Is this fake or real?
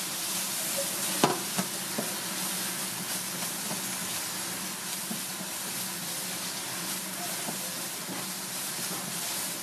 real